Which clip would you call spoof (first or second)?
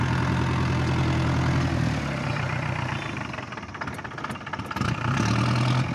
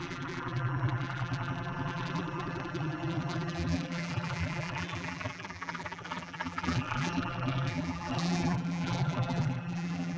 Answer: second